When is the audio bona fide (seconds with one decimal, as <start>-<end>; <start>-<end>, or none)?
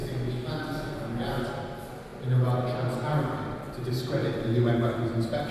0.0-5.5